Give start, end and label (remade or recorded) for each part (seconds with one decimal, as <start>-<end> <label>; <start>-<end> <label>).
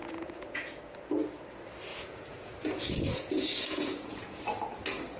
0.0-0.8 remade; 0.8-1.9 recorded; 1.9-4.4 remade; 4.4-5.2 recorded